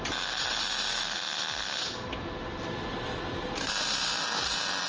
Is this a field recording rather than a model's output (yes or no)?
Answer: yes